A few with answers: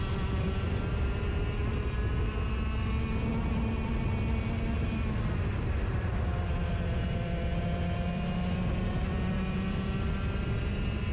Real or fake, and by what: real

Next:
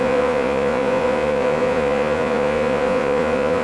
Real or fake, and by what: fake, vocoder, Vocos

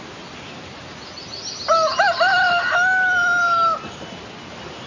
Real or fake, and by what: real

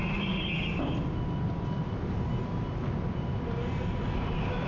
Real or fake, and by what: real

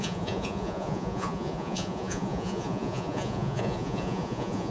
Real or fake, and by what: fake, vocoder, Vocos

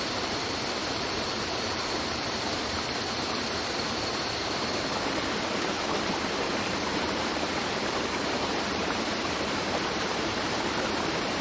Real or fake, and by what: fake, vocoder, BigVGAN v2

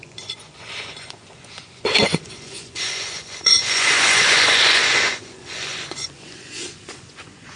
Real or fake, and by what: fake, vocoder, Vocos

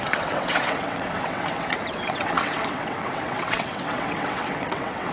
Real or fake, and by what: fake, vocoder, WaveNeXt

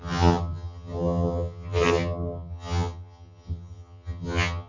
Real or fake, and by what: fake, vocoder, HiFi-GAN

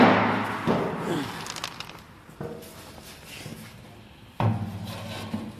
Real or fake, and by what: real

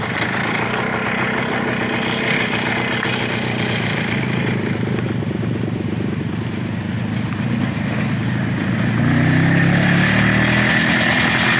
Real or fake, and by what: real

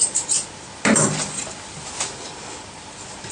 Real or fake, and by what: real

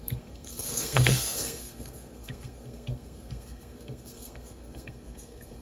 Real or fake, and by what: fake, codec, SNAC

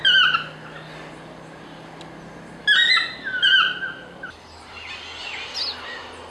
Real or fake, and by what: real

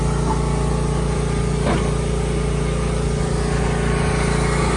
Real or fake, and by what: real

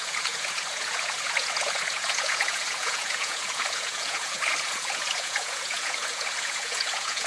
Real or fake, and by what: fake, vocoder, Vocos